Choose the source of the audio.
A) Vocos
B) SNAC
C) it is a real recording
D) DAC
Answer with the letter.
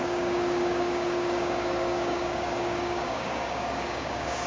D